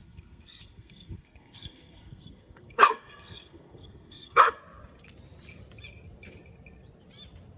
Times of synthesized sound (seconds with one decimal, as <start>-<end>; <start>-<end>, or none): 0.0-4.6